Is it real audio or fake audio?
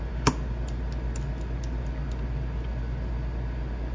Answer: real